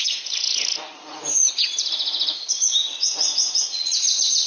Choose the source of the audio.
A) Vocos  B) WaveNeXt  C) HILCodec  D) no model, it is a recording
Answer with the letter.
A